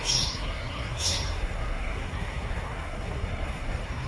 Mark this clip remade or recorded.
remade